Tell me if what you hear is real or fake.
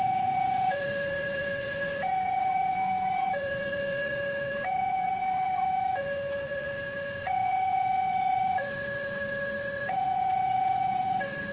fake